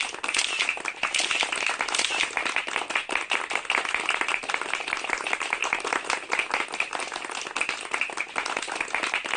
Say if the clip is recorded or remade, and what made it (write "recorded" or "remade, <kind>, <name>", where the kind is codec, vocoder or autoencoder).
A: recorded